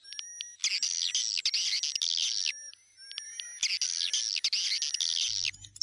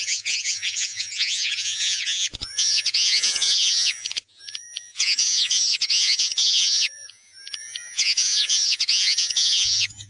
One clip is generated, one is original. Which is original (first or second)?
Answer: first